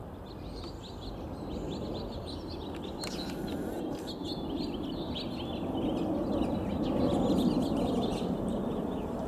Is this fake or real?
real